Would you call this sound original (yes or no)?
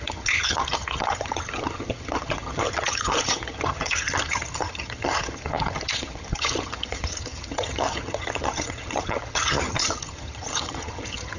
no